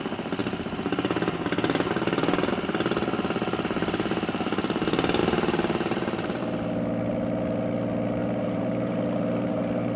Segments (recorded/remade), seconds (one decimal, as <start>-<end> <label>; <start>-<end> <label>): 0.0-0.4 recorded; 0.4-2.5 remade; 2.5-5.2 recorded; 5.2-6.4 remade; 6.4-8.2 recorded; 8.2-10.0 remade